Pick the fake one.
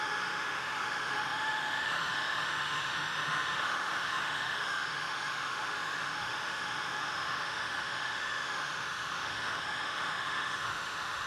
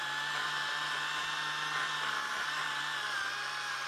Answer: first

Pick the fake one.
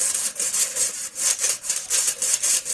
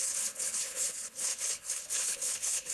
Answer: second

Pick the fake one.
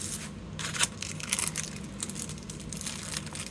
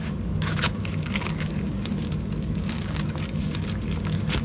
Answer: second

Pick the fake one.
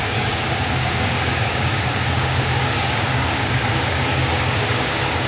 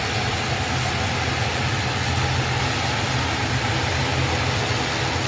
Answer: first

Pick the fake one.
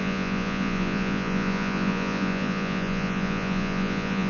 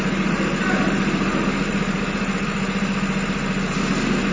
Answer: first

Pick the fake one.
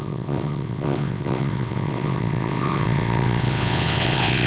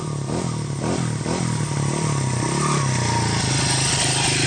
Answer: first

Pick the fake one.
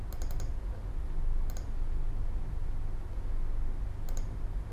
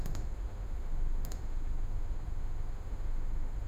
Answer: second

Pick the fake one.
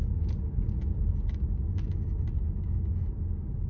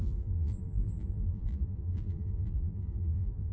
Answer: second